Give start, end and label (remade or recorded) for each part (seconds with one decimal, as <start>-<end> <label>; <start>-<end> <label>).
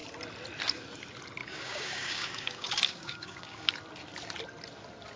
0.0-1.4 recorded; 1.4-3.7 remade; 3.7-5.2 recorded